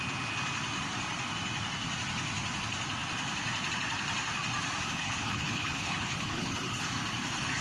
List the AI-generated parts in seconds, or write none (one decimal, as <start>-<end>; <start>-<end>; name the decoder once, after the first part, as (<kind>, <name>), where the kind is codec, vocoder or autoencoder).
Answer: 5.0-6.9 (codec, HILCodec)